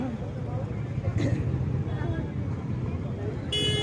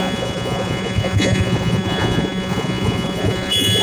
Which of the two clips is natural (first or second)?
first